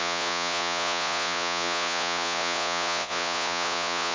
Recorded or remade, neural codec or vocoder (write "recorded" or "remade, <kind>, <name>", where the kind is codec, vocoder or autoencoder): remade, vocoder, Vocos